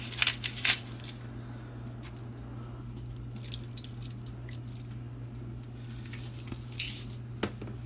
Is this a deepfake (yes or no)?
no